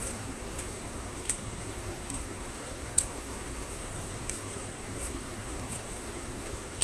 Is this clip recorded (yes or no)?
no